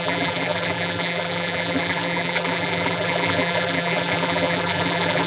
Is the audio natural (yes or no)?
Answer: no